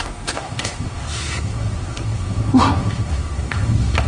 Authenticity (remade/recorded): remade